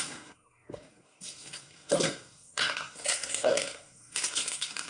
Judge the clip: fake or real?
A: fake